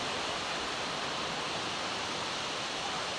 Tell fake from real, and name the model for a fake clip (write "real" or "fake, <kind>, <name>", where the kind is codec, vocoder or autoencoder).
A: real